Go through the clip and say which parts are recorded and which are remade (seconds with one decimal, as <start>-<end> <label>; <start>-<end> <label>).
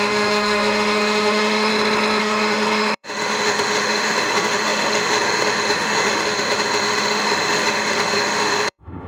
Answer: 0.0-1.7 remade; 1.7-2.2 recorded; 2.2-9.1 remade